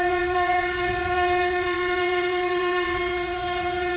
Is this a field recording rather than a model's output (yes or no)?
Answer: no